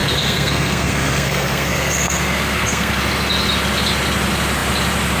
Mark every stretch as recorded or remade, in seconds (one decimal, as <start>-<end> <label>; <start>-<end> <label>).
0.0-3.0 remade; 3.0-5.2 recorded